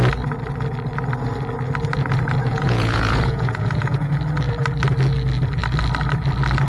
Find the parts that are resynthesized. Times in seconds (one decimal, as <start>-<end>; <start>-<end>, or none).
2.5-4.1